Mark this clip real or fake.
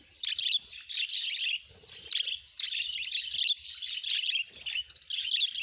real